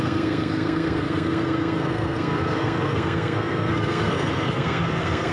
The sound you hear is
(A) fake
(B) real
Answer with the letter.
A